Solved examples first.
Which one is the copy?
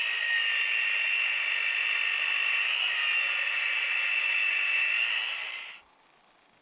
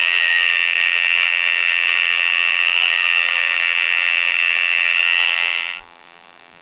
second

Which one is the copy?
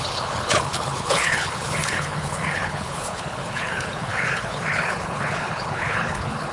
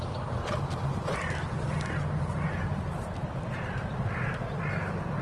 first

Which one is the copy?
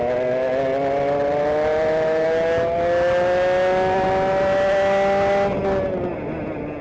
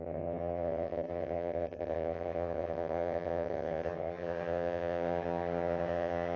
second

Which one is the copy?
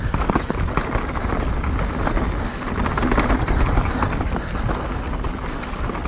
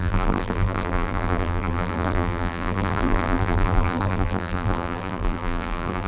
second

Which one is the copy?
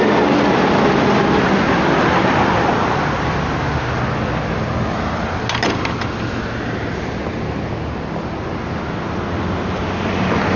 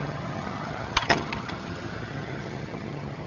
second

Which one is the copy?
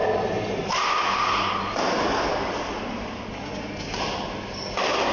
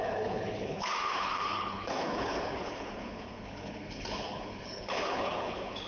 second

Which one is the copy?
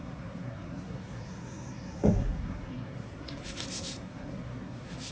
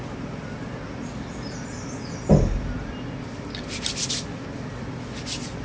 first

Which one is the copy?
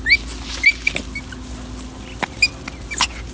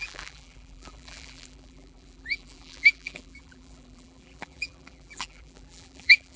second